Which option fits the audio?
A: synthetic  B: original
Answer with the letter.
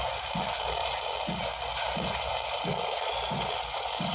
B